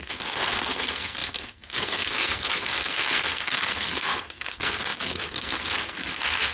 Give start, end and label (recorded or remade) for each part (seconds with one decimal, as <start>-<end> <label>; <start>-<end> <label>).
0.0-6.5 remade